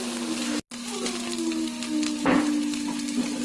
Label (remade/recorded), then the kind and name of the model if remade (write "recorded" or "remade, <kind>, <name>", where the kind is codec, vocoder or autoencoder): recorded